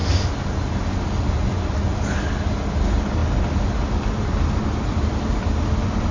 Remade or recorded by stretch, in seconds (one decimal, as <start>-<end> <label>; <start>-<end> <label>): 0.0-6.1 recorded